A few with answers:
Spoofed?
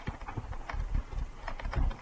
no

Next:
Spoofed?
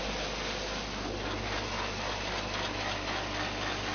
no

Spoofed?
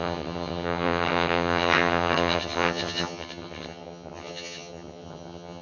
yes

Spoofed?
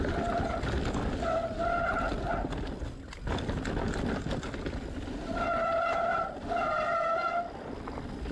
no